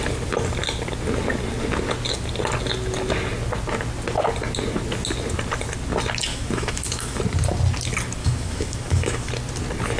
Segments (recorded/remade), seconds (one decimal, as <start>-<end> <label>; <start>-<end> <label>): 0.0-6.3 recorded; 6.3-7.2 remade; 7.2-8.2 recorded; 8.2-9.3 remade; 9.3-10.0 recorded